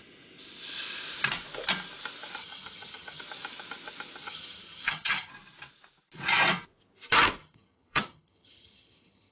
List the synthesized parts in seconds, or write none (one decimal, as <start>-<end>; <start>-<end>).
2.4-3.2; 4.2-5.3; 7.4-9.3